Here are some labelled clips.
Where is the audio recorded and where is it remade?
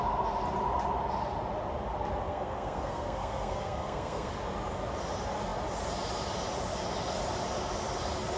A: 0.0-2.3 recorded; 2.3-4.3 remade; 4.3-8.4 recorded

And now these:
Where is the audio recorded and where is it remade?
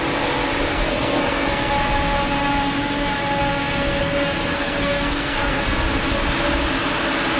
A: 0.0-0.7 recorded; 0.7-1.7 remade; 1.7-3.5 recorded; 3.5-4.0 remade; 4.0-4.5 recorded; 4.5-5.6 remade; 5.6-7.4 recorded